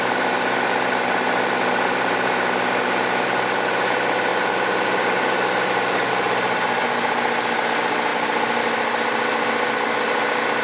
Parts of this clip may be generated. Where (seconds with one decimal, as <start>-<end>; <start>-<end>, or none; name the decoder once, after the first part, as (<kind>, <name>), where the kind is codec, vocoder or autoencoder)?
4.3-6.1 (vocoder, BigVGAN v2); 8.1-8.6